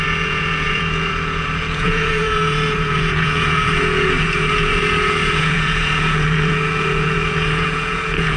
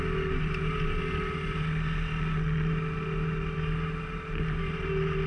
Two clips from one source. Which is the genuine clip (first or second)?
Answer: second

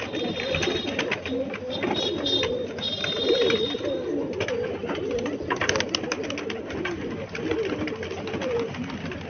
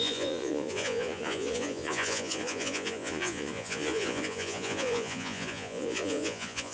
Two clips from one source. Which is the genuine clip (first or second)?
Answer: first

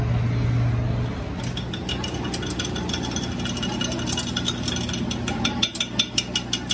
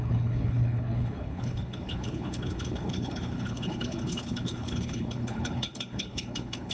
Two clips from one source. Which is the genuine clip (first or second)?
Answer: first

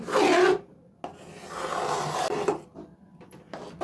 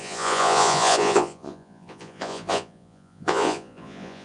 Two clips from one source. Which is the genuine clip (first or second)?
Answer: first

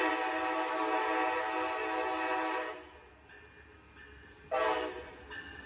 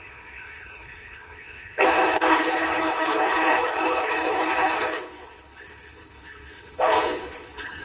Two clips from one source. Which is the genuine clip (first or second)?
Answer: first